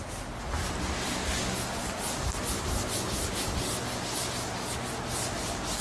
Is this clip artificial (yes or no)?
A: no